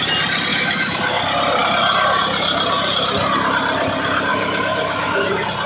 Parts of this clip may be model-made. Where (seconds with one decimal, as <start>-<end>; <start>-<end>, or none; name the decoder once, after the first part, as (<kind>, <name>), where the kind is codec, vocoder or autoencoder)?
0.5-1.2 (autoencoder, DAC-VAE); 4.3-5.3